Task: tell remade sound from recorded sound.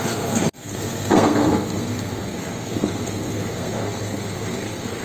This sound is remade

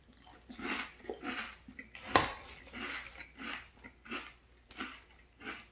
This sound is recorded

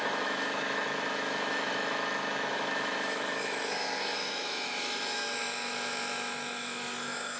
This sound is remade